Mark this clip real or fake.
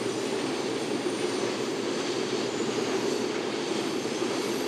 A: fake